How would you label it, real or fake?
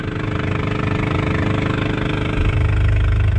real